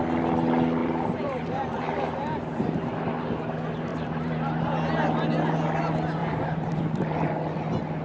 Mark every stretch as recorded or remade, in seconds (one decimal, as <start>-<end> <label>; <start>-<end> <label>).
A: 0.0-0.8 recorded; 0.8-3.1 remade; 3.1-3.9 recorded; 3.9-4.6 remade; 4.6-6.2 recorded; 6.2-6.8 remade; 6.8-8.0 recorded

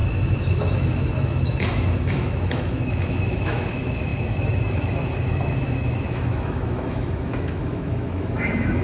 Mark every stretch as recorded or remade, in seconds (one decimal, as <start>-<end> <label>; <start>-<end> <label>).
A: 0.0-8.8 remade

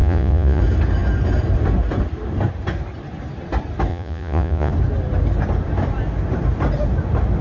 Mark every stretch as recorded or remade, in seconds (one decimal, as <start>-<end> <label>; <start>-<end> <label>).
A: 0.0-0.6 remade; 0.6-3.9 recorded; 3.9-4.7 remade; 4.7-7.4 recorded

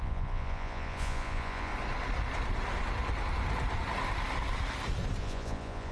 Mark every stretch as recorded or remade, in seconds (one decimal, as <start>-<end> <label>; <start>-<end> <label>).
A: 0.0-1.7 remade; 1.7-5.2 recorded; 5.2-5.9 remade

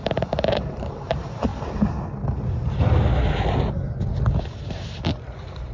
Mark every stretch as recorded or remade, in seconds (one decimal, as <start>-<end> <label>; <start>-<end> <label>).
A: 0.0-1.5 remade; 1.5-4.4 recorded; 4.4-5.7 remade

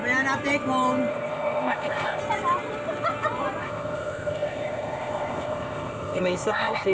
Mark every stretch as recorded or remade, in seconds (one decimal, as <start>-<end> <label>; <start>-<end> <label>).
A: 0.0-1.1 recorded; 1.1-2.2 remade; 2.2-3.6 recorded; 3.6-6.9 remade